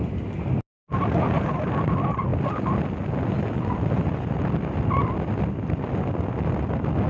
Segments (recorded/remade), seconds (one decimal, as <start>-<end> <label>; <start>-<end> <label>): 0.0-7.1 recorded